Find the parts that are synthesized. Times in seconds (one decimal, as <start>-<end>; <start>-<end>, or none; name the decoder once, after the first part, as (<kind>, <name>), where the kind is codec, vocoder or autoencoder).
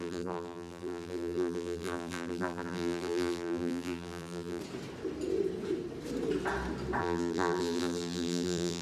0.0-4.6 (vocoder, BigVGAN v2); 7.0-8.8